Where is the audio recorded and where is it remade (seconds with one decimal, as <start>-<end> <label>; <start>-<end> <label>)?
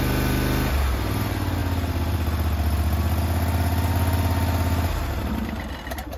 0.0-6.2 recorded